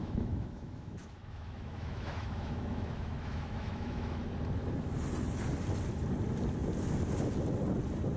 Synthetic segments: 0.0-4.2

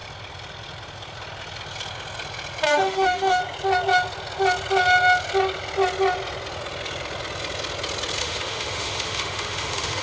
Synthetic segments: 2.7-3.4; 8.2-10.0

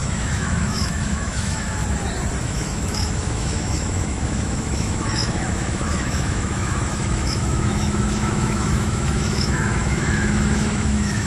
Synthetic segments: 0.0-1.8; 2.4-11.3

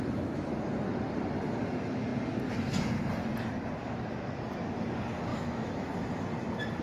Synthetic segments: 3.8-4.4; 5.3-5.9

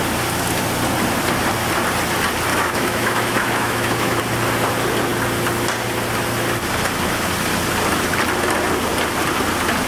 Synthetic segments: 2.5-4.2